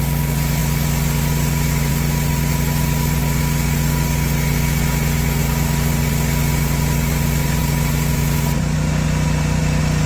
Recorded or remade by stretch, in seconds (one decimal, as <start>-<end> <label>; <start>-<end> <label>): 0.0-10.1 recorded